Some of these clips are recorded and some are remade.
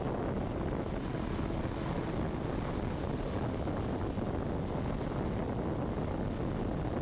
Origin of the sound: recorded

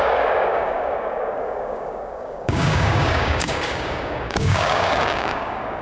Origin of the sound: remade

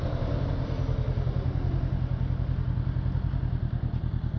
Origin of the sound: recorded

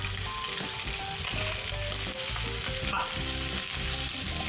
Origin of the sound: recorded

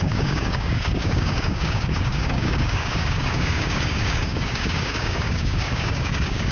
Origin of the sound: remade